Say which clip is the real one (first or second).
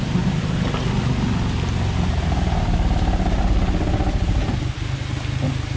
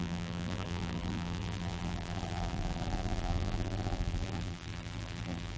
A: first